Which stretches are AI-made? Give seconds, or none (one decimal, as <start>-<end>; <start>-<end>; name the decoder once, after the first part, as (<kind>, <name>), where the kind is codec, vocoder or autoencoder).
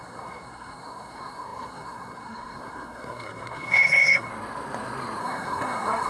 0.0-4.3 (codec, SNAC); 5.2-6.1